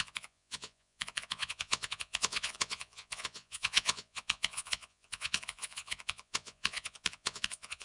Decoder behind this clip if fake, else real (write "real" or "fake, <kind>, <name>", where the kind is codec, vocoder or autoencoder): fake, vocoder, Vocos